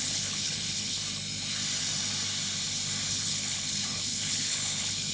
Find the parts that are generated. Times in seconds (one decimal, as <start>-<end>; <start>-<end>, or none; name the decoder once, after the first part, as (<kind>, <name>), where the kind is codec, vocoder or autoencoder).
0.0-1.0 (codec, HILCodec); 3.1-5.1